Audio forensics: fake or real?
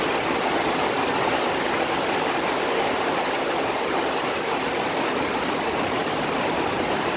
real